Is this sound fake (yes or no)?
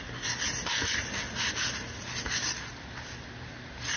no